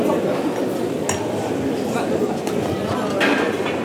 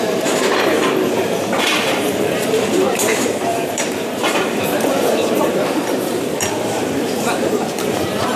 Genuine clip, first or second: first